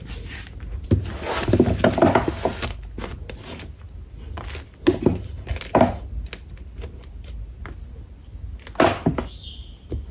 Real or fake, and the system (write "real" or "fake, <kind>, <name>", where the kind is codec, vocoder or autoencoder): real